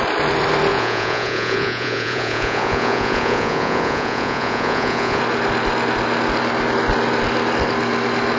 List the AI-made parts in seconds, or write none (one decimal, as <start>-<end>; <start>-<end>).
0.7-5.2

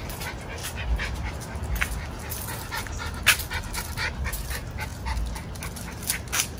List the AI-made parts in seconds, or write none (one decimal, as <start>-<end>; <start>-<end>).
none